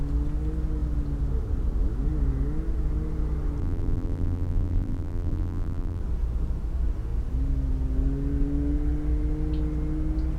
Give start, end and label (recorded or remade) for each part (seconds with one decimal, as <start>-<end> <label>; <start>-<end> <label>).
0.0-3.6 recorded; 3.6-6.0 remade; 6.0-10.4 recorded